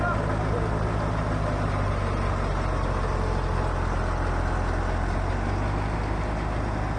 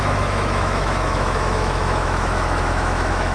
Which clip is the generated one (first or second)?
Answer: second